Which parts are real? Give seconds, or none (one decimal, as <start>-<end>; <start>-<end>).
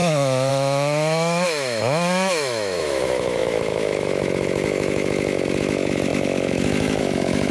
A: none